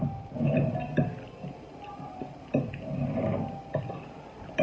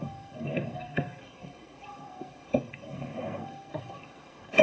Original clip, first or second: first